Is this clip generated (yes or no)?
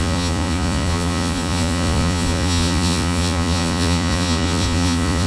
yes